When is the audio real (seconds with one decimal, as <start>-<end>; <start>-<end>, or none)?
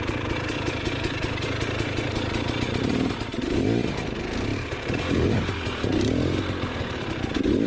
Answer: none